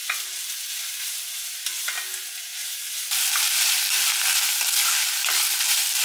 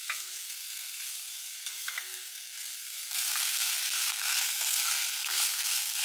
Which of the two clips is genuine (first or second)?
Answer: first